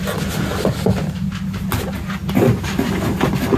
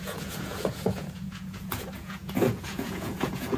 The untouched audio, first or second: first